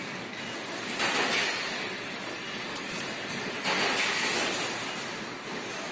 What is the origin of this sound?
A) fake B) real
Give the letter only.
B